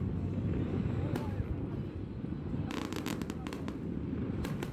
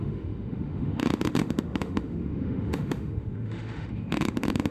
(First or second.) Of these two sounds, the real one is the first